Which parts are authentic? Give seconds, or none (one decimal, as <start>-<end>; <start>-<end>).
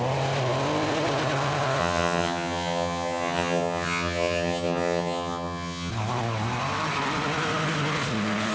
0.0-1.8; 5.9-8.5